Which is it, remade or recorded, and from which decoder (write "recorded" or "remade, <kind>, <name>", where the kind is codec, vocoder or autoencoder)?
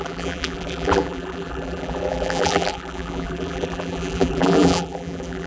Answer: remade, vocoder, BigVGAN v2